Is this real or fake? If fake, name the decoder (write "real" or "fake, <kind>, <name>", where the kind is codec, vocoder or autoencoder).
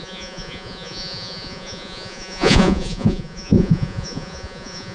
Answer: fake, vocoder, Vocos